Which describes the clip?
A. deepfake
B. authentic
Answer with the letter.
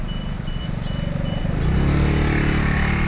B